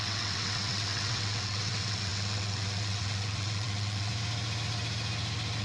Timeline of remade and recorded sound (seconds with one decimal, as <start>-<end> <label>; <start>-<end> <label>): 0.0-4.1 remade; 4.1-5.6 recorded